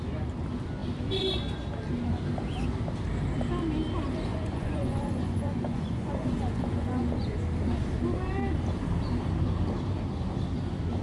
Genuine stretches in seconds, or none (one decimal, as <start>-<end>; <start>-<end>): 0.0-4.3; 7.4-11.0